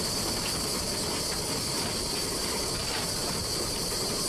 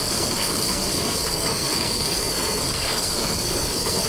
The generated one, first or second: second